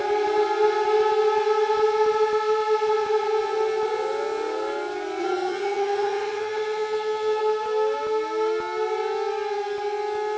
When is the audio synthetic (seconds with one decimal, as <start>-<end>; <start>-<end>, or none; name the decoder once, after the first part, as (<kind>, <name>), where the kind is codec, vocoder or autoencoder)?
5.2-7.4 (vocoder, HiFi-GAN)